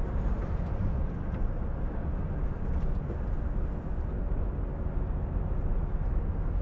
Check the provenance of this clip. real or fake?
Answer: real